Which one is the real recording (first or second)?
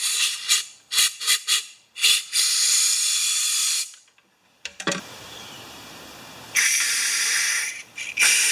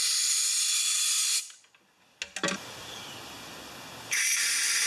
second